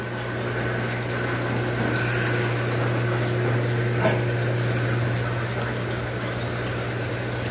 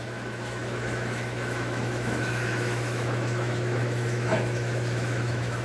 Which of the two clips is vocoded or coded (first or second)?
second